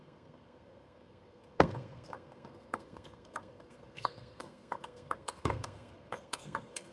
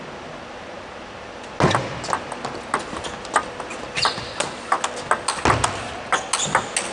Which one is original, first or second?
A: second